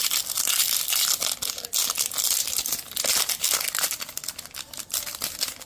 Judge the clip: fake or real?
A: real